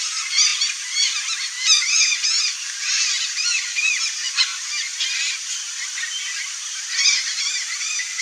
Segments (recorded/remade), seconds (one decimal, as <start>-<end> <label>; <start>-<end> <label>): 0.0-8.2 recorded